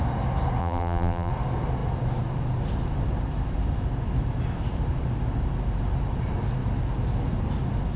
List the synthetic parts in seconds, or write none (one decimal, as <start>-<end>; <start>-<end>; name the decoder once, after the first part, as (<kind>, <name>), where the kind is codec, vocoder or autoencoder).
0.6-1.3 (vocoder, BigVGAN v2)